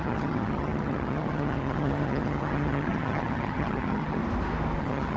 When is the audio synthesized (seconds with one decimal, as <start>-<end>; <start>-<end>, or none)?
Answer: 0.0-4.2; 4.8-5.2